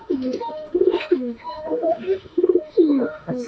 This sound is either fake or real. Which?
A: fake